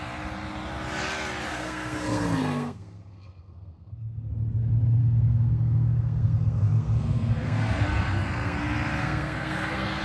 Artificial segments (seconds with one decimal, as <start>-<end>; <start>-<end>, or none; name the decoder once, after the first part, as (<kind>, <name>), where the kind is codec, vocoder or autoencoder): 1.5-4.3 (codec, SNAC); 5.0-8.6; 9.0-10.0